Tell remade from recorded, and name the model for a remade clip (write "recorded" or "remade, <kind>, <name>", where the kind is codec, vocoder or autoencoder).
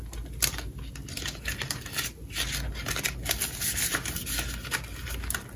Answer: recorded